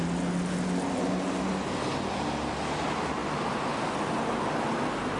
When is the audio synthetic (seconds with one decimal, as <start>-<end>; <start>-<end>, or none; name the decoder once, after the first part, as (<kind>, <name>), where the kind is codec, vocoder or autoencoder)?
none